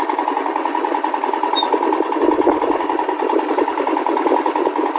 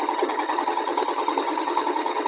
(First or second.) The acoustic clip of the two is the first